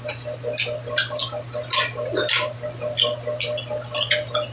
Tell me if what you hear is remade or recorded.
recorded